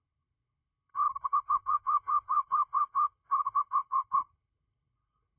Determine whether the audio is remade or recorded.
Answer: remade